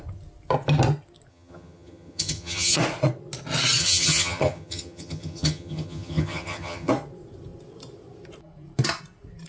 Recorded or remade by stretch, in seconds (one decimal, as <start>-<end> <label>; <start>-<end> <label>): 0.0-1.3 recorded; 1.3-2.8 remade; 2.8-3.8 recorded; 3.8-6.9 remade; 6.9-9.5 recorded